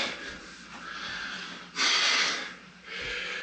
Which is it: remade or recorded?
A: recorded